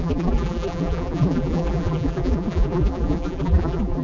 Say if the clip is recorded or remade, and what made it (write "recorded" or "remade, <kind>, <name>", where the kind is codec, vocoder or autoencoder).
remade, vocoder, BigVGAN v2